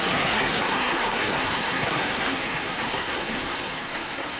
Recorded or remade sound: remade